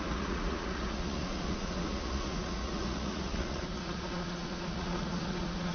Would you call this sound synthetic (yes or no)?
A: yes